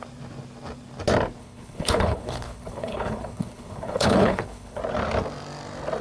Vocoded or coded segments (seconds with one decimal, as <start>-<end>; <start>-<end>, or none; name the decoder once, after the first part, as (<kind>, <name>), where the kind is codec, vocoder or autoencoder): 1.4-4.8 (codec, HILCodec)